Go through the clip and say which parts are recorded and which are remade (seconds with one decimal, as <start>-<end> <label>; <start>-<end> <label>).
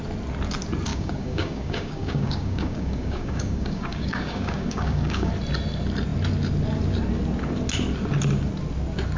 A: 0.0-0.9 recorded; 0.9-5.3 remade; 5.3-9.2 recorded